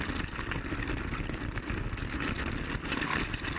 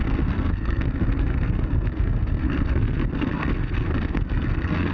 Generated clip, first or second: second